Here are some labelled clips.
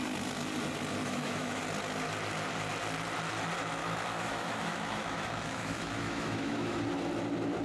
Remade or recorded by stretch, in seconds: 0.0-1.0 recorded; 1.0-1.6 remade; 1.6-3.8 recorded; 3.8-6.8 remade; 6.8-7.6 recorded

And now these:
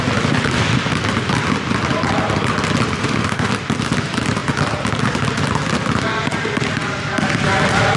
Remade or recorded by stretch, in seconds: 0.0-3.0 recorded; 3.0-3.5 remade; 3.5-8.0 recorded

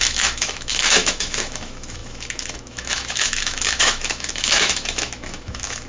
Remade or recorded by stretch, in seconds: 0.0-5.9 remade

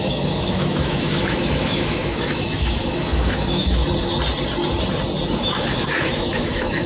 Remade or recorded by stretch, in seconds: 0.0-3.8 remade; 3.8-5.4 recorded; 5.4-6.9 remade